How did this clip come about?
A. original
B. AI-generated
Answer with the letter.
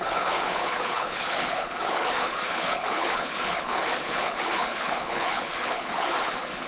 B